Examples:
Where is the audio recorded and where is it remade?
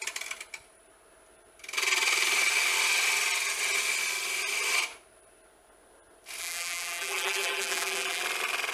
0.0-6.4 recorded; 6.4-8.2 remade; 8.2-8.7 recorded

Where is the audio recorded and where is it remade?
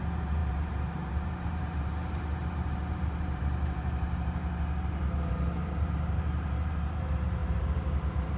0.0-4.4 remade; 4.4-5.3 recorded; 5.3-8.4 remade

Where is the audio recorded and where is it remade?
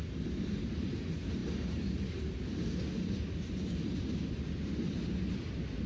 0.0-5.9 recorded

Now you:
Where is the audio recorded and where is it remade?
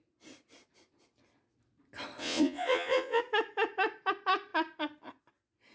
0.0-2.2 recorded; 2.2-3.2 remade; 3.2-5.7 recorded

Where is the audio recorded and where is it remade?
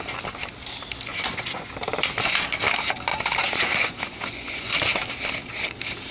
0.0-1.1 recorded; 1.1-1.7 remade; 1.7-3.1 recorded; 3.1-4.7 remade; 4.7-6.1 recorded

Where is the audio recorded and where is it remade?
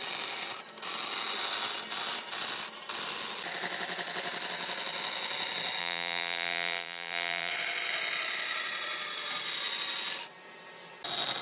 0.0-5.8 recorded; 5.8-7.5 remade; 7.5-11.4 recorded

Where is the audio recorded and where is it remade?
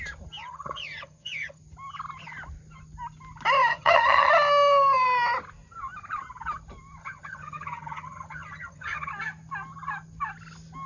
0.0-0.4 recorded; 0.4-1.6 remade; 1.6-3.7 recorded; 3.7-4.3 remade; 4.3-7.0 recorded; 7.0-9.1 remade; 9.1-10.9 recorded